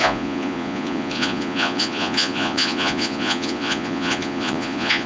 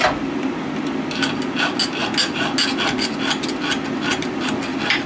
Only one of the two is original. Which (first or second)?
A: second